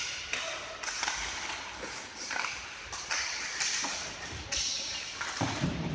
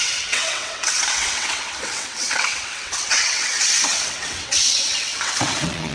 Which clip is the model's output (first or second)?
second